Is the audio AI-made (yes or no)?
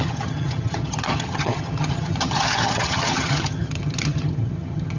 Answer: yes